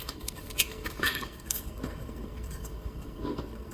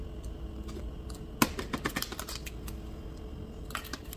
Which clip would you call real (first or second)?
second